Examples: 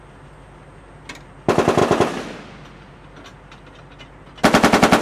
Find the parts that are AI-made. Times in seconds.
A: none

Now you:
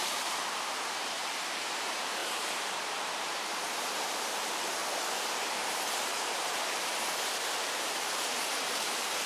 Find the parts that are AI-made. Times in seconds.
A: 0.0-4.8 (vocoder, BigVGAN v2); 5.7-9.3